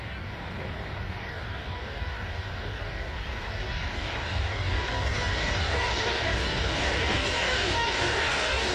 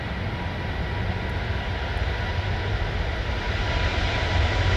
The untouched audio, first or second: second